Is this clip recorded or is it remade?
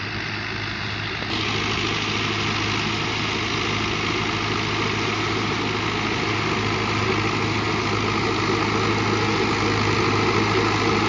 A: recorded